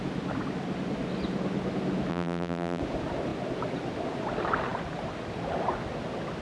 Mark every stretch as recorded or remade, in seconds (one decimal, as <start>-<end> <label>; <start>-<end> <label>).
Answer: 0.0-2.1 recorded; 2.1-2.8 remade; 2.8-6.4 recorded